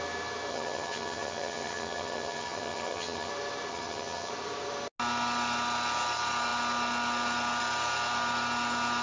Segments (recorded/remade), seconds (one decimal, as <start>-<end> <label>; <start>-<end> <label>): 0.0-0.5 recorded; 0.5-3.3 remade; 3.3-3.7 recorded; 3.7-4.3 remade; 4.3-9.0 recorded